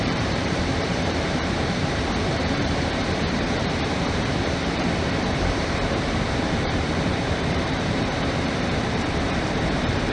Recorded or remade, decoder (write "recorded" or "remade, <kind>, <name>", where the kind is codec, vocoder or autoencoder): remade, vocoder, BigVGAN v2